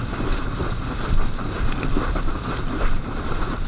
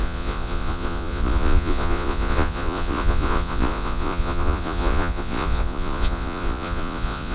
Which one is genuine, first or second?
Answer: first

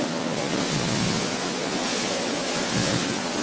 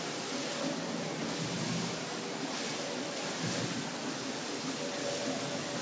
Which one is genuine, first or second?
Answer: second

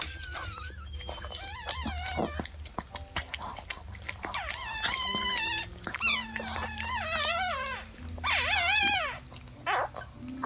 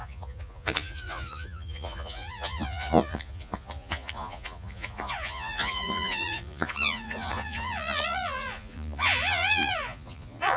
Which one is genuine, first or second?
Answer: first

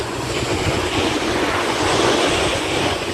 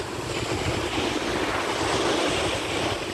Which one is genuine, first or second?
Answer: second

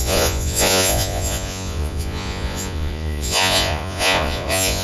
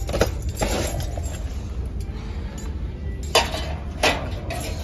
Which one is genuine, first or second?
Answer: second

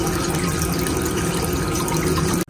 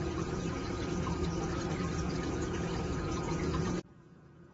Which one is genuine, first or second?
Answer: first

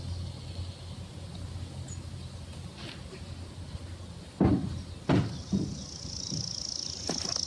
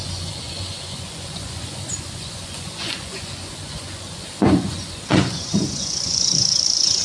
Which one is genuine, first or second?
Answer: first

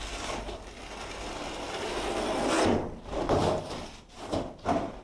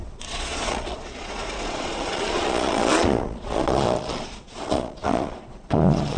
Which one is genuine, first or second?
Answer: first